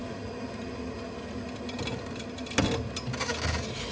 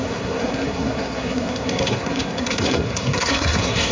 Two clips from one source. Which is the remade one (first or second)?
second